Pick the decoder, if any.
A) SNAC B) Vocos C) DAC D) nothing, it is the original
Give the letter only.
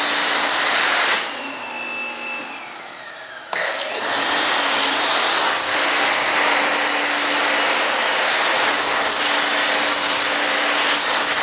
D